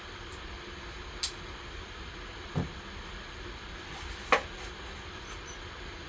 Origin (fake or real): real